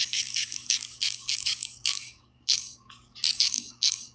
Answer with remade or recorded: remade